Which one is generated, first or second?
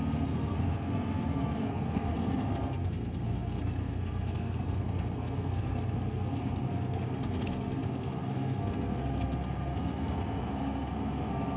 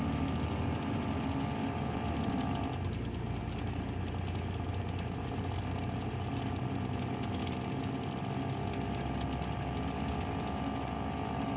first